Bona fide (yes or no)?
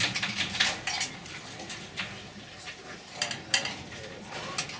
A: yes